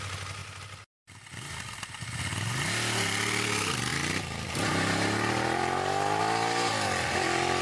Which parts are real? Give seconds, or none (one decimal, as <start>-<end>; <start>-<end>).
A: 0.0-7.6